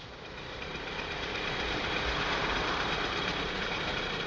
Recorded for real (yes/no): no